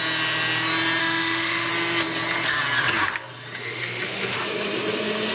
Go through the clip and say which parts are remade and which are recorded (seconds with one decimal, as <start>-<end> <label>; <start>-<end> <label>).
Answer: 0.0-1.0 recorded; 1.0-1.7 remade; 1.7-3.6 recorded; 3.6-4.4 remade; 4.4-5.3 recorded